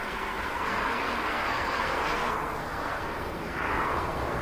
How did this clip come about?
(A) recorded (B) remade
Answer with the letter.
B